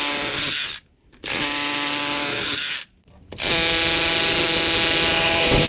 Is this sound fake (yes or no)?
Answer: no